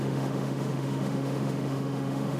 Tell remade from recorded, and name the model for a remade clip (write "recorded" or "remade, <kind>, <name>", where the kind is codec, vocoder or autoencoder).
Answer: remade, autoencoder, DAC-VAE